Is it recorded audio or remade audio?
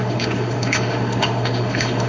remade